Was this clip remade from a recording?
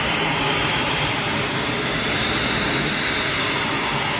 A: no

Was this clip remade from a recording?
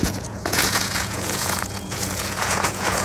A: yes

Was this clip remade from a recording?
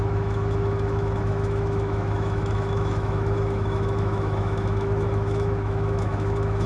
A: yes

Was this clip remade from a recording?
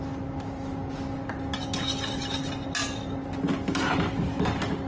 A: no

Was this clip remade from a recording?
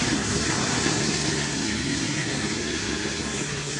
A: yes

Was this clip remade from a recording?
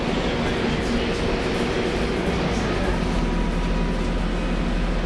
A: no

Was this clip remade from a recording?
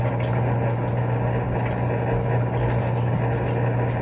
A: no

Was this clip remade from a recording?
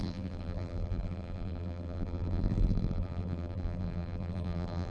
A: yes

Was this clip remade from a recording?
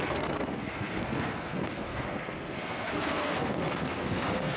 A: yes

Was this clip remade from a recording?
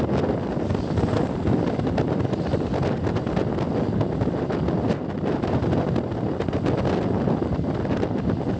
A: no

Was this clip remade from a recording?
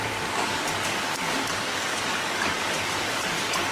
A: yes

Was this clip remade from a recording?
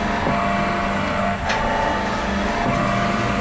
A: no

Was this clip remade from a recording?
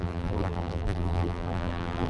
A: yes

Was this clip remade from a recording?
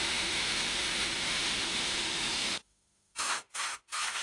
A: yes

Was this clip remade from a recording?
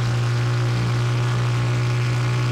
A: no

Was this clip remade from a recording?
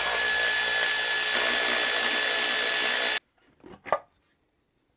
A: no